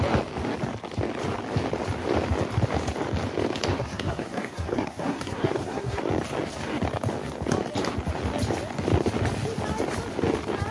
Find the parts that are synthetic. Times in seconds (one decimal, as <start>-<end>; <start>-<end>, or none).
3.7-6.0